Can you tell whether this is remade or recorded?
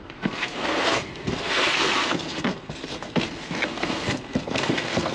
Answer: remade